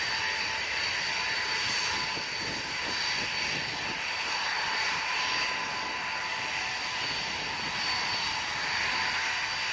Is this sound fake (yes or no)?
no